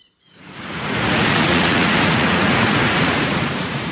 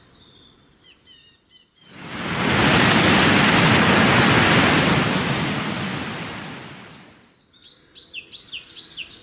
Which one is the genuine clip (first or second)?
second